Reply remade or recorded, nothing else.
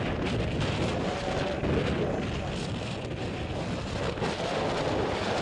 recorded